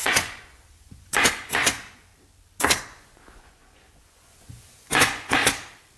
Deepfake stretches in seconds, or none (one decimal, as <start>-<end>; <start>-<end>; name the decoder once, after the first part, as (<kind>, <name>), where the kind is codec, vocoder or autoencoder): 0.0-2.1 (vocoder, Vocos); 2.8-5.4